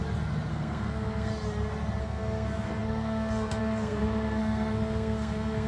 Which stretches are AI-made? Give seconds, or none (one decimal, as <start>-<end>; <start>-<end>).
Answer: 0.5-1.3; 2.0-5.7